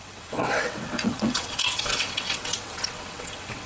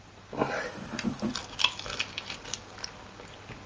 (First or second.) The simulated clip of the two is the first